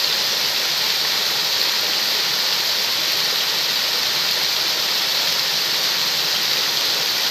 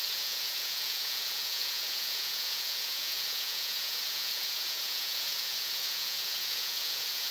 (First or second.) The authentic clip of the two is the first